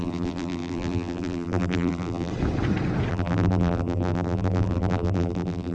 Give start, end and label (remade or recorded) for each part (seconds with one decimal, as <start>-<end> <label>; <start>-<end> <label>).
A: 0.0-2.3 remade; 2.3-3.1 recorded; 3.1-5.7 remade